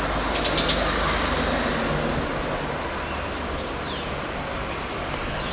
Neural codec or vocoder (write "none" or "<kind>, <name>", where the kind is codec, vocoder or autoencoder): none